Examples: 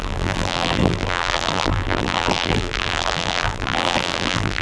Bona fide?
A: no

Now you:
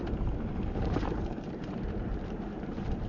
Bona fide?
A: no